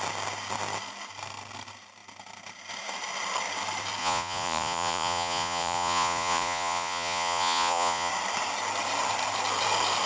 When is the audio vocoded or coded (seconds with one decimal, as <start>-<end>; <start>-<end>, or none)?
4.0-8.1